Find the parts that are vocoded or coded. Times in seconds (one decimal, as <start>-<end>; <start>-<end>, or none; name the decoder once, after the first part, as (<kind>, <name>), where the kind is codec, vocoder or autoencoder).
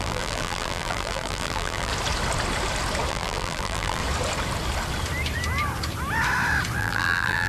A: 0.0-1.9 (vocoder, BigVGAN v2); 3.1-4.0; 6.8-7.5